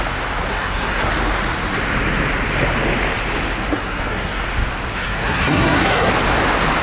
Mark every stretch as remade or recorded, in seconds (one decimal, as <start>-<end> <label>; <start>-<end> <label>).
0.0-0.5 recorded; 0.5-1.1 remade; 1.1-3.7 recorded; 3.7-4.4 remade; 4.4-4.9 recorded; 4.9-6.1 remade; 6.1-6.8 recorded

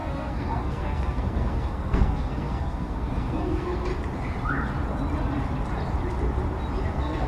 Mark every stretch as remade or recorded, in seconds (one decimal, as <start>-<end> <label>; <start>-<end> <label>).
0.0-3.9 remade; 3.9-6.8 recorded; 6.8-7.3 remade

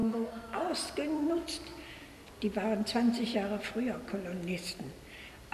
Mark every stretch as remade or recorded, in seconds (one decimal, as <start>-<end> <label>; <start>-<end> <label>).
0.0-0.6 remade; 0.6-5.5 recorded